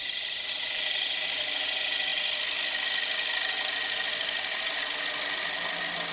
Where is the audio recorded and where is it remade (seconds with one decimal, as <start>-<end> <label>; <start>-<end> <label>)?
0.0-6.1 recorded